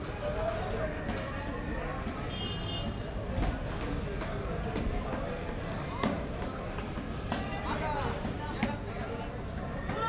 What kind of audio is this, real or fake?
real